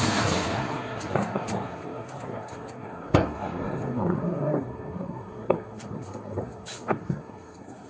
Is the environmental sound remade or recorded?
remade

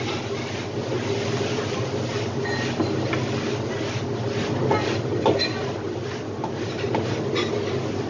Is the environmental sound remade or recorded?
recorded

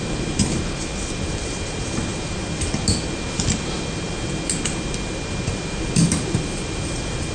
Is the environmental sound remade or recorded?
recorded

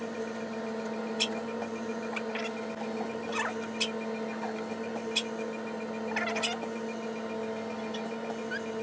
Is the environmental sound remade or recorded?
recorded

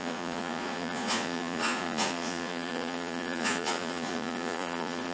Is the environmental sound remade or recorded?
remade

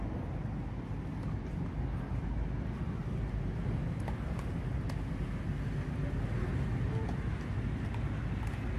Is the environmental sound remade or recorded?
recorded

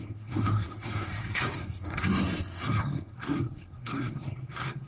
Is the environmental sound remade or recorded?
remade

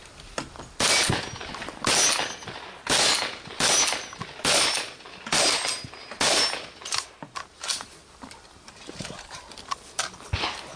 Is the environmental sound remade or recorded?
recorded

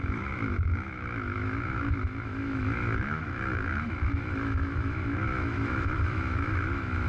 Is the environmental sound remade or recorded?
remade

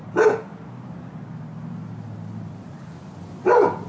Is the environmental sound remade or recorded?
recorded